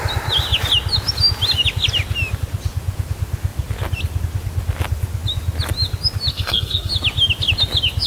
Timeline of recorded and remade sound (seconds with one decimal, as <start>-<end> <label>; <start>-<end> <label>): 0.0-6.3 recorded; 6.3-6.9 remade; 6.9-8.1 recorded